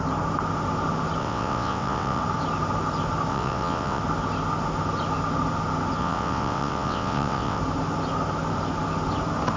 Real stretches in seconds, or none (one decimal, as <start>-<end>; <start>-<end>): 0.0-1.2; 2.2-3.3; 4.0-6.0; 7.6-9.6